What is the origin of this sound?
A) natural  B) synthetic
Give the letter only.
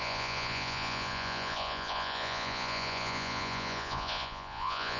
B